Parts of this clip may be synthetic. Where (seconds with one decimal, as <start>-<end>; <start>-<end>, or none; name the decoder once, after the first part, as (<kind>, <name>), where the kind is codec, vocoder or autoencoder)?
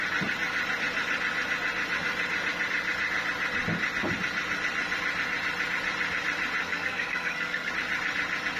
6.6-7.7 (codec, SNAC)